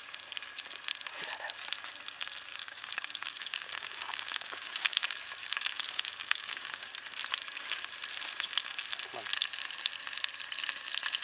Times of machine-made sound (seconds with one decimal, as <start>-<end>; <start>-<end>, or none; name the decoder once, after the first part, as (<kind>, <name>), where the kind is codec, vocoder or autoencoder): 2.5-5.0 (codec, DAC); 5.4-6.9